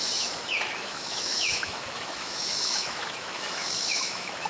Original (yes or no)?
no